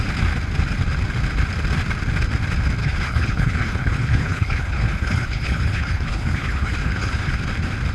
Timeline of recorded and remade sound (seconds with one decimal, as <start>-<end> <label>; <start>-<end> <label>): 0.0-2.8 recorded; 2.8-7.3 remade; 7.3-7.9 recorded